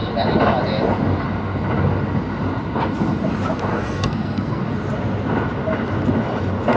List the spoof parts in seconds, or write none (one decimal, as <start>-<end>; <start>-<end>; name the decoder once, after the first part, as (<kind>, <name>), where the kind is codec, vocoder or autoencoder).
3.7-4.6 (codec, SNAC)